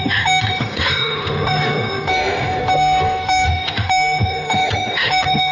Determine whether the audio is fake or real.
fake